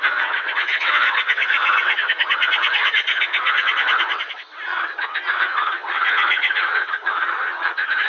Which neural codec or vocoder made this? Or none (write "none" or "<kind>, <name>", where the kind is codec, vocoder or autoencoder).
vocoder, WaveNeXt